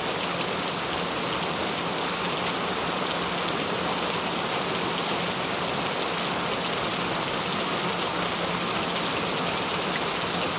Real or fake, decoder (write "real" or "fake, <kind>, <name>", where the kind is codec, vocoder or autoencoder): real